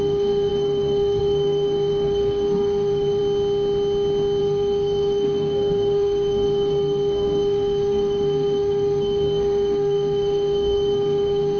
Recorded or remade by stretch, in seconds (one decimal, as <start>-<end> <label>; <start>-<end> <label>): 0.0-3.2 remade; 3.2-4.4 recorded; 4.4-11.6 remade